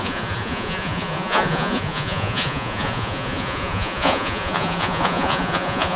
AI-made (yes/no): yes